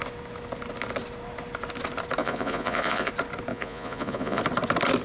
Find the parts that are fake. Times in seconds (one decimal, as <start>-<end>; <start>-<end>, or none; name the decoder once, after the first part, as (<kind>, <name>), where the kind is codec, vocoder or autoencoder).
2.2-3.1 (vocoder, Vocos); 3.5-4.4